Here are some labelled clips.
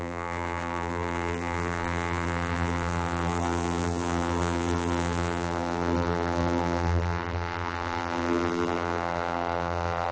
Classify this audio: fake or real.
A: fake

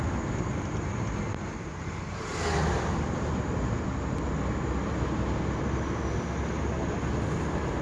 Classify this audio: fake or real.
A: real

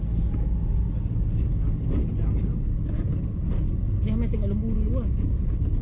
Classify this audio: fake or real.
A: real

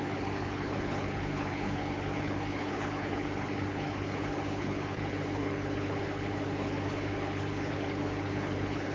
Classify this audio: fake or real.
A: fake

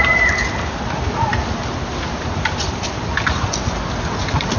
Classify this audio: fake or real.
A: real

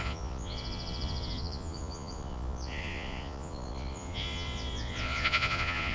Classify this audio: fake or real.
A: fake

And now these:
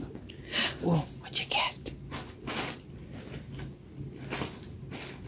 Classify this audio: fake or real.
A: real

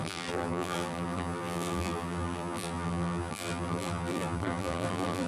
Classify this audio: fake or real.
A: fake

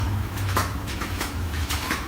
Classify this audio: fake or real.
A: fake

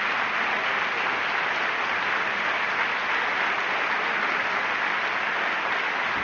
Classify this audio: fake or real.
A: real